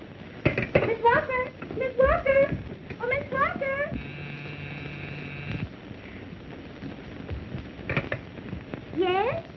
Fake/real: real